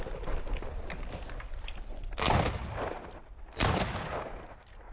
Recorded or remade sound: recorded